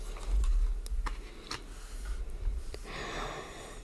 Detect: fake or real real